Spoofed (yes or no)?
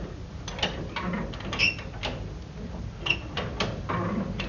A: no